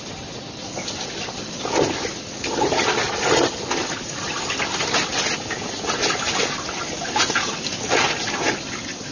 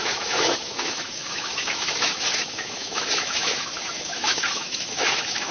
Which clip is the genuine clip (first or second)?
first